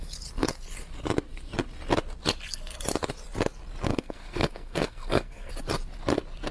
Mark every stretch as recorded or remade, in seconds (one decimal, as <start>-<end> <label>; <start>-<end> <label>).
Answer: 0.0-3.9 recorded; 3.9-5.5 remade; 5.5-6.5 recorded